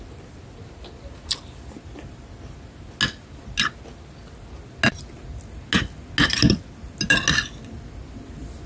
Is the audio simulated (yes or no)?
no